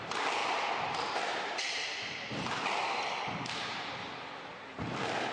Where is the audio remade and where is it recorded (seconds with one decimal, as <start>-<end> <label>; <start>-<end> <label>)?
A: 0.0-0.4 recorded; 0.4-3.6 remade; 3.6-5.3 recorded